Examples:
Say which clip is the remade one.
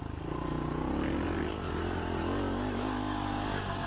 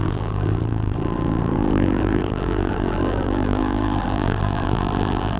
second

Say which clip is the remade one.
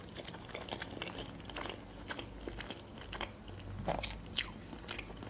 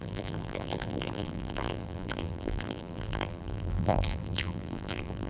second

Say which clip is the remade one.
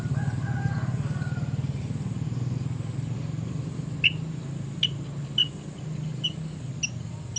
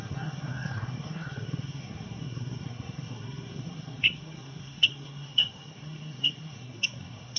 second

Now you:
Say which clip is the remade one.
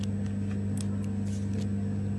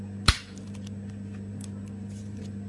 second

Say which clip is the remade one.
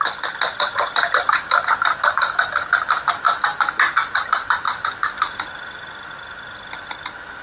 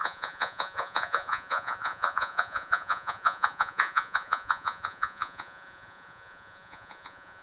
second